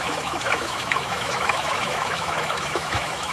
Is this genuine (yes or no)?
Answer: no